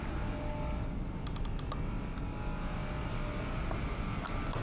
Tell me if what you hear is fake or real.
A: real